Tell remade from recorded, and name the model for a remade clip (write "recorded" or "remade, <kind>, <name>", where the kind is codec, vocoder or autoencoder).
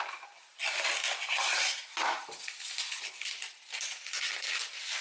recorded